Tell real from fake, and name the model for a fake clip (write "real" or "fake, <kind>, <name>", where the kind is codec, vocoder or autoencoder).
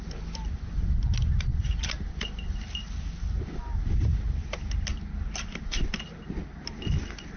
real